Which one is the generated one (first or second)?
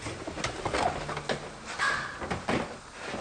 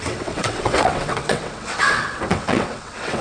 second